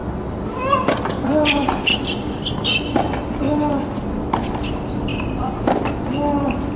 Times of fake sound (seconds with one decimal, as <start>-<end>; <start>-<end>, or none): none